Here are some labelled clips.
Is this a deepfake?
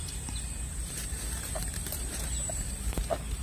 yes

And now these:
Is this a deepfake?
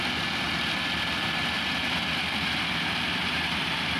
no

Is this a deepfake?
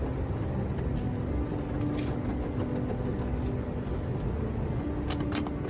no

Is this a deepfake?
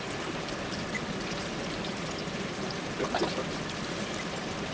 yes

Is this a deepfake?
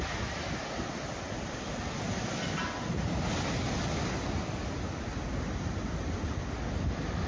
no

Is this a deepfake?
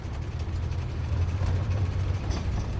yes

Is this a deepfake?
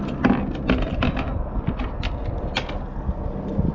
no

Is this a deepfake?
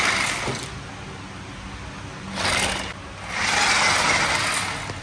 no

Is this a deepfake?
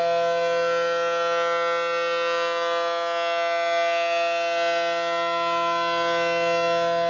no